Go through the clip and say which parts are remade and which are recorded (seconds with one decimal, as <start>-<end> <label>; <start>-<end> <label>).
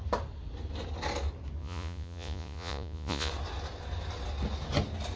0.0-1.6 recorded; 1.6-3.3 remade; 3.3-5.2 recorded